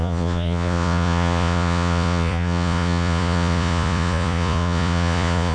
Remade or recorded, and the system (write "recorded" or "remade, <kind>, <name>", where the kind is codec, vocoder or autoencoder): remade, vocoder, Vocos